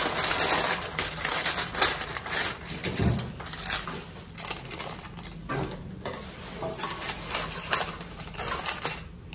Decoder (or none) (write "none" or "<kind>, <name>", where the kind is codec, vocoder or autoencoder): none